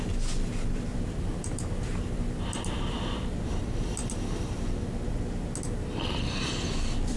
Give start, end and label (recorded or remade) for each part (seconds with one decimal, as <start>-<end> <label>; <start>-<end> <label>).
0.0-0.9 recorded; 0.9-3.6 remade; 3.6-7.2 recorded